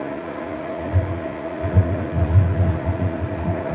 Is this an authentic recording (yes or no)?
no